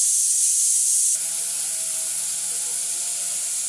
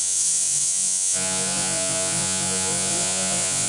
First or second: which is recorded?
first